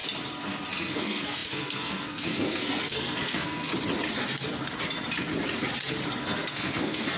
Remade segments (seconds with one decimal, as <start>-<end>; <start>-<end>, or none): 0.7-3.7; 6.2-7.2